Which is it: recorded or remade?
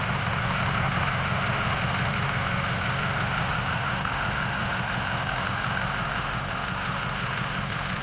remade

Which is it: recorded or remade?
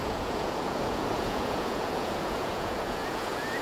remade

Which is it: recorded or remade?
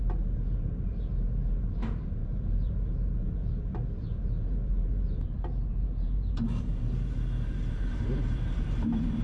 remade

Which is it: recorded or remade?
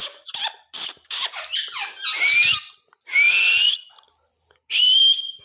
recorded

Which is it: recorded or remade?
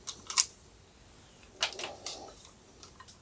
recorded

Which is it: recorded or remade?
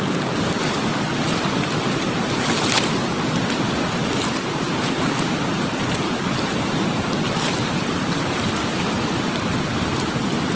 recorded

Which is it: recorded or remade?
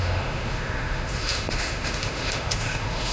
remade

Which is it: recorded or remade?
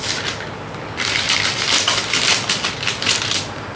recorded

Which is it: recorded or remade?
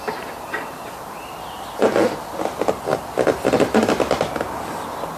recorded